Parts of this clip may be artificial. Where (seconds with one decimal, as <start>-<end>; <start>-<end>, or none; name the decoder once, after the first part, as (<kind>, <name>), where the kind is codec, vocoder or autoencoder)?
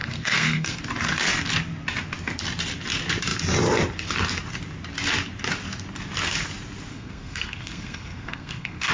0.0-0.8 (codec, SNAC); 6.9-8.9